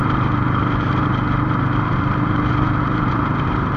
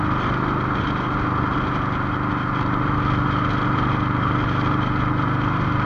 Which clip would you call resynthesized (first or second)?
first